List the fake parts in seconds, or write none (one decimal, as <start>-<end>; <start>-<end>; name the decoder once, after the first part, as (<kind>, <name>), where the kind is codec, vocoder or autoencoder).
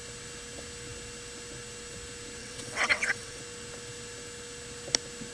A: 2.4-3.4 (vocoder, WaveNeXt)